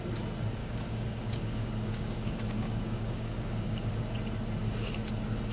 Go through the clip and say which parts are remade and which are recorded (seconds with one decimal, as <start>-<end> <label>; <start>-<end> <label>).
0.0-0.6 recorded; 0.6-3.9 remade; 3.9-5.5 recorded